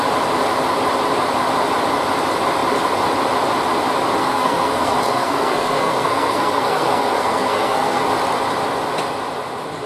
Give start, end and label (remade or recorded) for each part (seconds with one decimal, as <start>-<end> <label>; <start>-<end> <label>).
0.0-4.2 recorded; 4.2-8.1 remade; 8.1-9.9 recorded

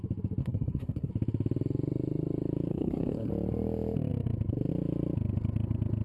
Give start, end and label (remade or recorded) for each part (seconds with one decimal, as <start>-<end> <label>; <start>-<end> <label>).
0.0-0.4 recorded; 0.4-1.1 remade; 1.1-2.7 recorded; 2.7-3.3 remade; 3.3-6.0 recorded

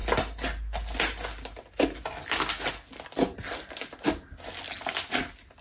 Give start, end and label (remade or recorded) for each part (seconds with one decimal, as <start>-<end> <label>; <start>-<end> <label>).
0.0-5.6 recorded

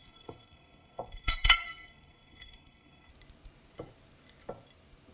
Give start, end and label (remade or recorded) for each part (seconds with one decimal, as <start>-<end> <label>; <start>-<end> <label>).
0.0-3.1 remade; 3.1-5.1 recorded

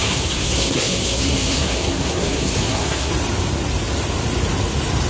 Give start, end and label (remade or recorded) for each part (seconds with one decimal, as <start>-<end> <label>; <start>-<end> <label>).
0.0-3.1 remade; 3.1-5.1 recorded

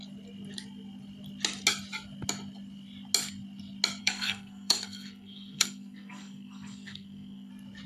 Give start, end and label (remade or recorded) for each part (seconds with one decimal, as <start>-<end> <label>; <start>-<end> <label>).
0.0-4.0 recorded; 4.0-7.5 remade; 7.5-7.9 recorded

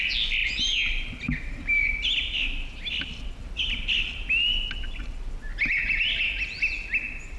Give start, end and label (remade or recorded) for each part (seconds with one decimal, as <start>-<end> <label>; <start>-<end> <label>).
0.0-7.4 recorded